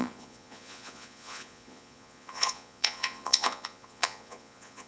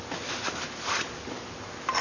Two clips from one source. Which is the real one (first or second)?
second